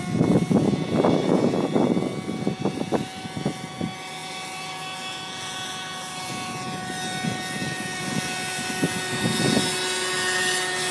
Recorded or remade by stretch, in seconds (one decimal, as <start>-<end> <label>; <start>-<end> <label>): 0.0-10.9 recorded